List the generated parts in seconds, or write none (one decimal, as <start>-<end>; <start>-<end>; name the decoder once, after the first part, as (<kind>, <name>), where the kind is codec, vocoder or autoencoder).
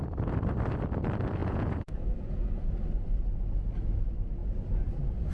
1.4-2.6 (vocoder, Vocos)